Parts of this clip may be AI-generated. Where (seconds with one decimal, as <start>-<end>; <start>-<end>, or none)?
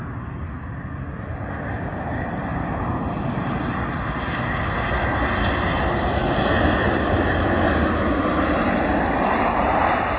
none